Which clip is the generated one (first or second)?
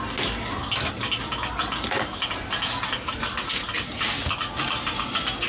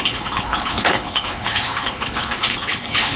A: second